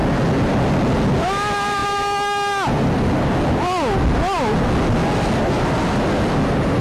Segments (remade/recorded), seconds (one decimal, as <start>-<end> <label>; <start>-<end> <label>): 0.0-6.8 recorded